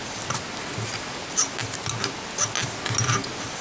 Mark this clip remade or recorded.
recorded